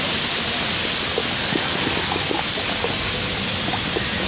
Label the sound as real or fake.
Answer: real